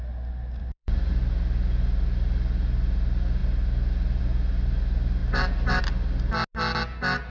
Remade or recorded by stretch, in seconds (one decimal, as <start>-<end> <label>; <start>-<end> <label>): 0.0-0.6 recorded; 0.6-1.2 remade; 1.2-7.3 recorded